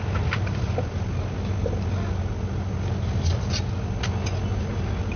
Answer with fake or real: real